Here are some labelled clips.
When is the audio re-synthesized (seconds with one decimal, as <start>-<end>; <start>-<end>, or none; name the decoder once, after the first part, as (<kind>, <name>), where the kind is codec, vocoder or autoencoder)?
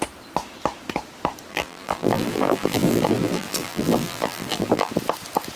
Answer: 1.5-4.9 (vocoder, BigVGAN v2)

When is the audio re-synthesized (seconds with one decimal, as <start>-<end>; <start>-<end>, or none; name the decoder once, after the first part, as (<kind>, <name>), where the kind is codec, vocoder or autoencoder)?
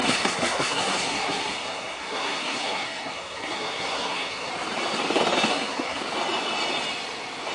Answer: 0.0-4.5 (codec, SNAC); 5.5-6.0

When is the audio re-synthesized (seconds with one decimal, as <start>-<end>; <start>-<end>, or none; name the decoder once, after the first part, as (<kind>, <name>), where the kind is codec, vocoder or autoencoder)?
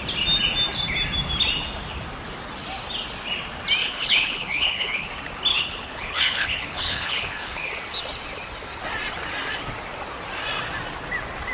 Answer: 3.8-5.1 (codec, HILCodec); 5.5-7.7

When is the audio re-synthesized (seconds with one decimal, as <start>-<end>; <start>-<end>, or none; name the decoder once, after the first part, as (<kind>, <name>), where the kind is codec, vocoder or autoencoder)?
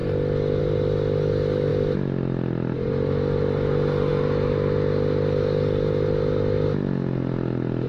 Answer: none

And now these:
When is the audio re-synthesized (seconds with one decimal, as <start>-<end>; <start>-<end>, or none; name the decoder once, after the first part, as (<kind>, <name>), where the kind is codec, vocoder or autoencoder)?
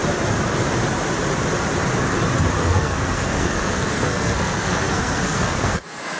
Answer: 2.6-6.2 (codec, SNAC)